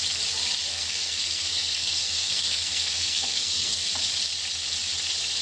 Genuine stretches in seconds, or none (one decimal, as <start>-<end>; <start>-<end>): 0.0-0.7; 3.9-5.4